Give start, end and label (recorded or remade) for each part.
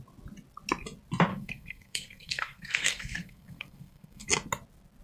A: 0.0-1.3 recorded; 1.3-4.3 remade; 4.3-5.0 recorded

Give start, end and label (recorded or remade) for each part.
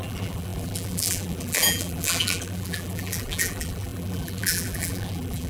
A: 0.0-5.5 remade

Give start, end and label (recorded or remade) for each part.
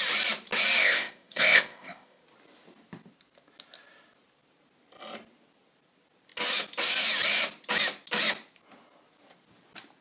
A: 0.0-0.8 recorded; 0.8-2.2 remade; 2.2-10.0 recorded